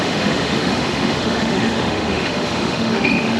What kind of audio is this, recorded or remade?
remade